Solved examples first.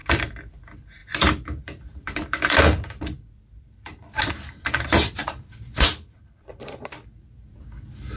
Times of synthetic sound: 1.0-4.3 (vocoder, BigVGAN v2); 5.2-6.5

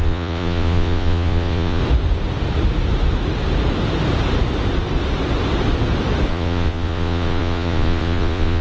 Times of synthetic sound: 0.0-1.8 (vocoder, Vocos); 6.3-8.6

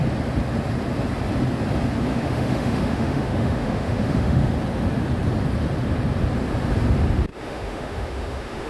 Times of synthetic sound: 2.1-4.5 (autoencoder, DAC-VAE); 7.3-8.7

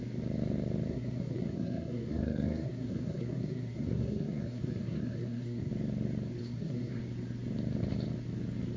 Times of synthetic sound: 0.9-5.7 (codec, SNAC); 6.4-7.0

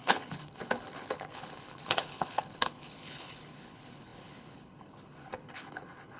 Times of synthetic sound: 0.0-6.2 (codec, HILCodec)

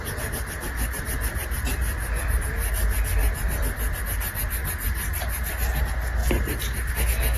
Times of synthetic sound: 1.9-2.4 (vocoder, BigVGAN v2); 3.2-4.0; 6.2-6.9

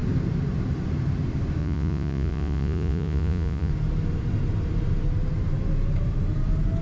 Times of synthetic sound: 1.6-3.7 (vocoder, Vocos)

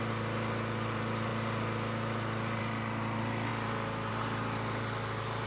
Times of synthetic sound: 0.0-5.5 (vocoder, BigVGAN v2)